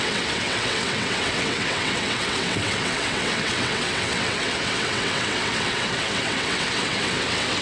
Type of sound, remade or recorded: remade